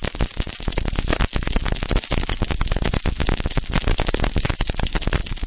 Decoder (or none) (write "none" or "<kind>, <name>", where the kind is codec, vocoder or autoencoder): none